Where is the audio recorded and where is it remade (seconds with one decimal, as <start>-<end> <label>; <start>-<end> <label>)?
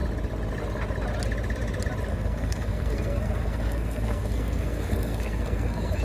0.0-2.1 recorded; 2.1-6.0 remade